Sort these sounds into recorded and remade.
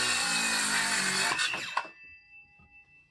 recorded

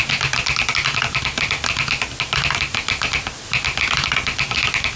recorded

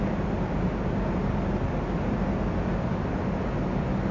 recorded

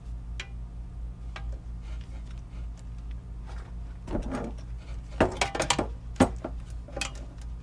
recorded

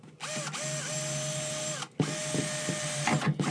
recorded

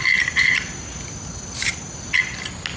recorded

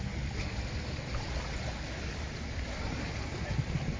recorded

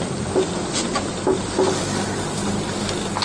recorded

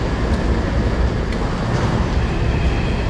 recorded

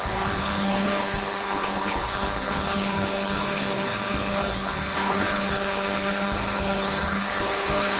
remade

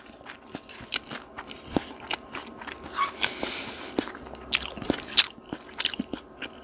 recorded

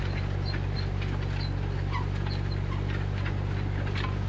recorded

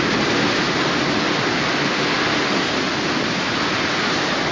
recorded